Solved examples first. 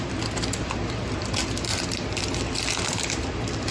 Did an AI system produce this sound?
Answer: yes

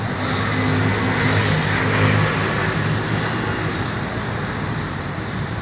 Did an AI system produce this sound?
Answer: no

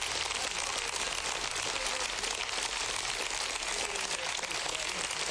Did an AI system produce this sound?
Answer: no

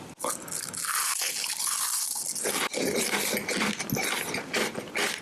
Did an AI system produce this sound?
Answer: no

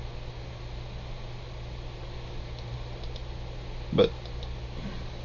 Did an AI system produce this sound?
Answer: no